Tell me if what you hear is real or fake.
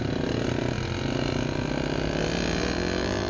real